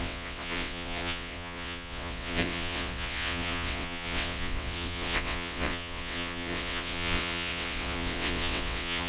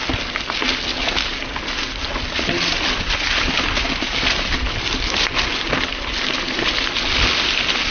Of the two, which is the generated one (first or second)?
first